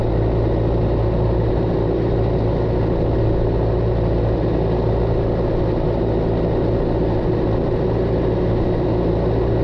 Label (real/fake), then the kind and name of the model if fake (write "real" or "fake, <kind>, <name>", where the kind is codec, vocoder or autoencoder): real